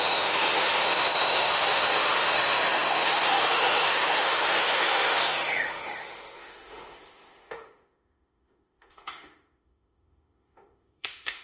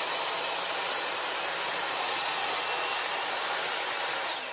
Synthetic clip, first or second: first